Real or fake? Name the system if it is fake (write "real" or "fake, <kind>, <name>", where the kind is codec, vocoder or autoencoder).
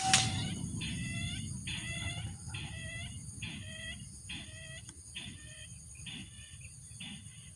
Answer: real